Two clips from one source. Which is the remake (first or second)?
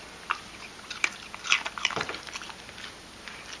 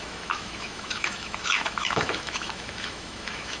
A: second